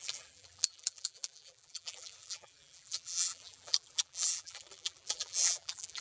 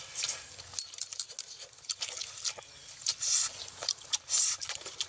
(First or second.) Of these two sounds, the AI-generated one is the first